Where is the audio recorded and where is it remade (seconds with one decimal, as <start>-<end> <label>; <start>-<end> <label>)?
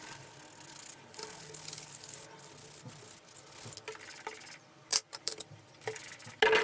0.0-4.9 recorded; 4.9-5.7 remade; 5.7-6.6 recorded